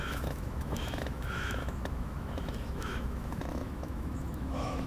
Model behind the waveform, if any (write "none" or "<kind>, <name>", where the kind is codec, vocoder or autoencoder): autoencoder, DAC-VAE